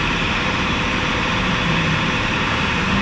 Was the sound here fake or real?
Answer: fake